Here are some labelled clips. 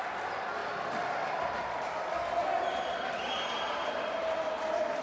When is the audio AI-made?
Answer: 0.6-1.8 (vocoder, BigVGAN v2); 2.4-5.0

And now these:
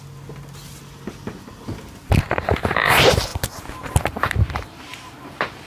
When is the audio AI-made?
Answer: 2.3-5.7 (vocoder, BigVGAN v2)

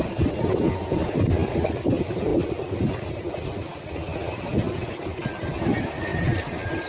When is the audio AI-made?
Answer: none

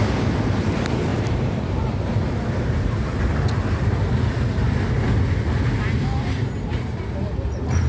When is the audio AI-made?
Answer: 1.1-3.2 (vocoder, BigVGAN v2)